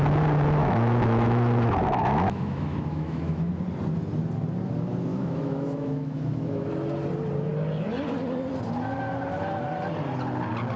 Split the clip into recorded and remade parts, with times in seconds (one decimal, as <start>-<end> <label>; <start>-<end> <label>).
0.0-0.6 recorded; 0.6-3.5 remade; 3.5-5.1 recorded; 5.1-6.7 remade; 6.7-10.8 recorded